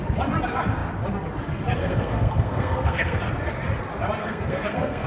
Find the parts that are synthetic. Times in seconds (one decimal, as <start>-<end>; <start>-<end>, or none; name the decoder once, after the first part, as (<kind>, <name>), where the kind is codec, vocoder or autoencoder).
1.8-3.2 (codec, SNAC); 4.2-5.1